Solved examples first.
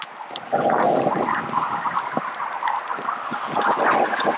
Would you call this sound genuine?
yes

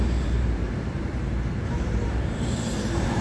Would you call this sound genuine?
no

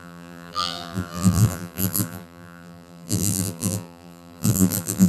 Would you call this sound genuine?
no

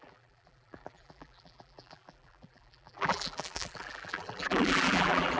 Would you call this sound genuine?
no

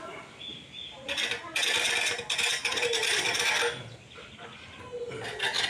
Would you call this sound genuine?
yes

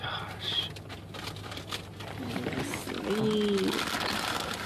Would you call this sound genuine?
yes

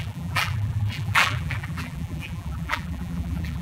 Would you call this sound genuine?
no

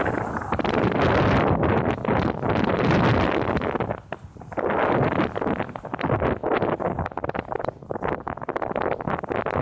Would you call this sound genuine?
yes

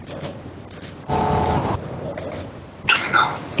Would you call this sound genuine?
yes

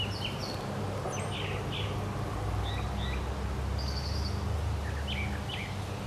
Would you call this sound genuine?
yes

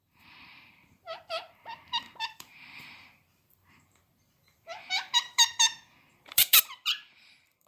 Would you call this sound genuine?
no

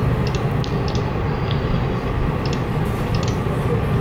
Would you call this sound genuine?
yes